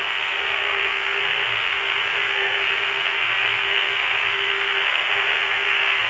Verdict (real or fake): fake